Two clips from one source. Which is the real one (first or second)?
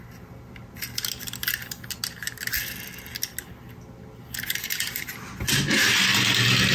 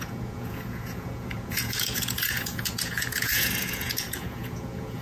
first